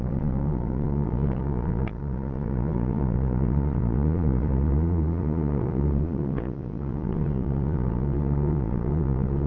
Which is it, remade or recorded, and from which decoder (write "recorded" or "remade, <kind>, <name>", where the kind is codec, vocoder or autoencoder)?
remade, vocoder, Vocos